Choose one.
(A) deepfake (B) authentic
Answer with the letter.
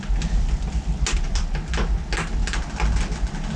B